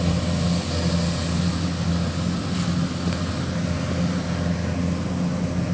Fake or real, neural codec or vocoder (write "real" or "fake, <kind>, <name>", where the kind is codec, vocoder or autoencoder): real